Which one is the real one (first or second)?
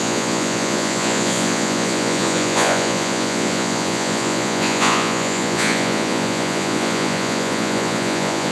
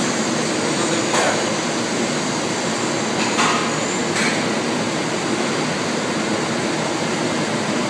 second